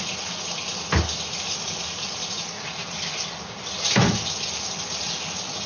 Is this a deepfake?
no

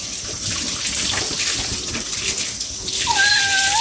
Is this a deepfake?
no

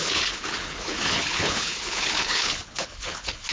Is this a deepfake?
yes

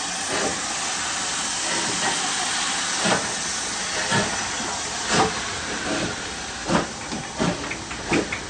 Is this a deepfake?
no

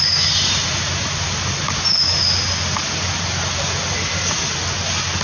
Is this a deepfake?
no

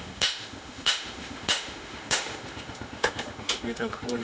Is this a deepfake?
yes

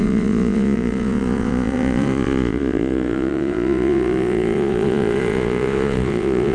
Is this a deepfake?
yes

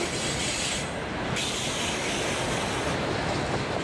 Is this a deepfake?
no